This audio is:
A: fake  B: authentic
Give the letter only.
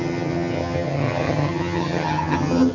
A